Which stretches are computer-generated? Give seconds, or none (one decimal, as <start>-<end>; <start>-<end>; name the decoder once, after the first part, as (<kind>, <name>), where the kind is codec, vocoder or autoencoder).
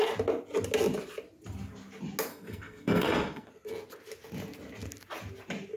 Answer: 2.3-3.5 (codec, SNAC)